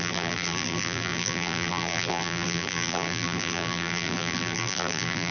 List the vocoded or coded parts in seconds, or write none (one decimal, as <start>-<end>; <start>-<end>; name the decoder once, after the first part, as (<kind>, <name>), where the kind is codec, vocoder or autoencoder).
0.0-5.3 (vocoder, BigVGAN v2)

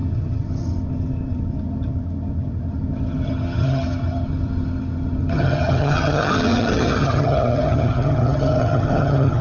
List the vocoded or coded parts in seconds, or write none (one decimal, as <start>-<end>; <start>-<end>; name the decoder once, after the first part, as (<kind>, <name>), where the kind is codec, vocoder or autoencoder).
0.0-9.4 (vocoder, HiFi-GAN)

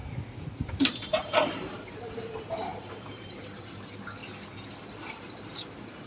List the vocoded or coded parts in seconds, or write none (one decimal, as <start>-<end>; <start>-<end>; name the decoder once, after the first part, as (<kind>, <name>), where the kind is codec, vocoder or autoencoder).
0.7-4.2 (vocoder, BigVGAN v2); 5.1-6.1

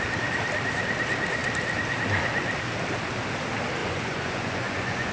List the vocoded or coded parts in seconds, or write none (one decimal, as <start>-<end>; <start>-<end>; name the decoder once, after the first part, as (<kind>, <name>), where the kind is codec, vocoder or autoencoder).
3.8-5.1 (vocoder, Vocos)

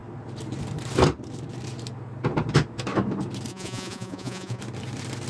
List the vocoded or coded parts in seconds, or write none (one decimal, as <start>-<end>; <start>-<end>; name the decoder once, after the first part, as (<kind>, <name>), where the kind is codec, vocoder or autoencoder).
3.5-4.6 (vocoder, Vocos)

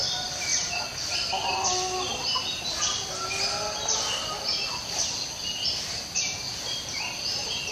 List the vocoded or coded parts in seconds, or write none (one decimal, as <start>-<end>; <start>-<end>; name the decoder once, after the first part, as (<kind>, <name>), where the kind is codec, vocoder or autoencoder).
none